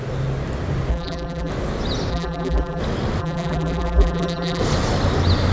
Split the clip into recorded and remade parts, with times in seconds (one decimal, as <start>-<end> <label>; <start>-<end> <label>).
0.0-0.9 recorded; 0.9-1.5 remade; 1.5-2.1 recorded; 2.1-2.8 remade; 2.8-3.2 recorded; 3.2-4.6 remade; 4.6-5.5 recorded